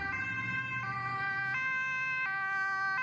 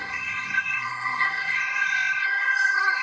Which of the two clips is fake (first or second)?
second